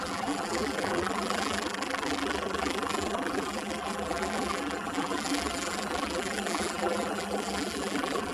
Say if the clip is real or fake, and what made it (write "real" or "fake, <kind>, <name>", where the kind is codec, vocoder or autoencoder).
fake, vocoder, BigVGAN v2